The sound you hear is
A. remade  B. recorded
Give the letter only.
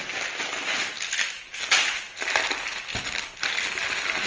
B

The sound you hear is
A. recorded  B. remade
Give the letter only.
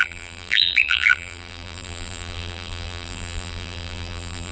B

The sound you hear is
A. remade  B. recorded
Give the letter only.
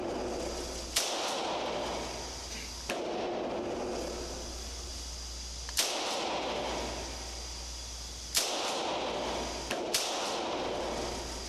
B